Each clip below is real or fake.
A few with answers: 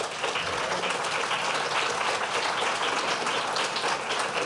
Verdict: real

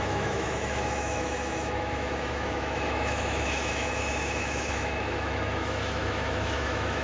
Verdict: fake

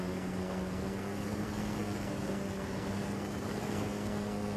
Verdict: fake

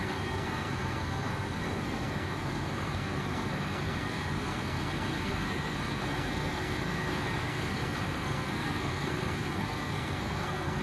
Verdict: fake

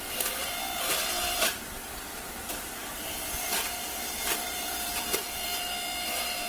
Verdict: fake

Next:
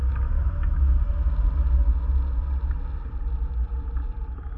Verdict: real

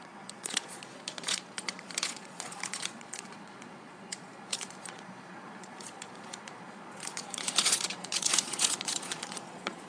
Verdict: fake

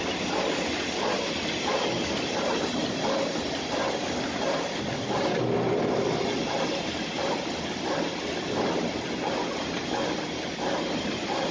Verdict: real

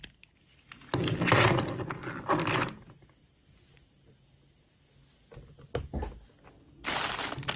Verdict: real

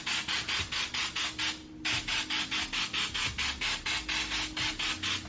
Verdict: real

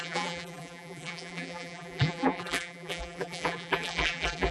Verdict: fake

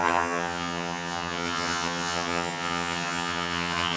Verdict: fake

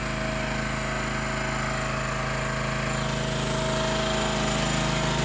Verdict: real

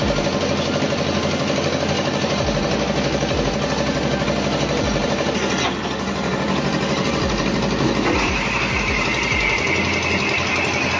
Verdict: real